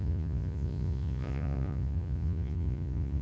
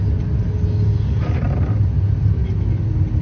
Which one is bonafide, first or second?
second